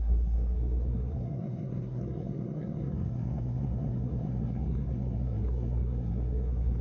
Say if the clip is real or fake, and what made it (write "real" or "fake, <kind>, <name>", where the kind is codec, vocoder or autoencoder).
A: fake, codec, SNAC